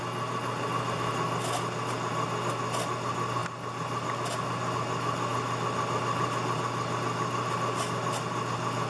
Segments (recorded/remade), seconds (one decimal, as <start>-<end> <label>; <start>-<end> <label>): 0.0-8.9 recorded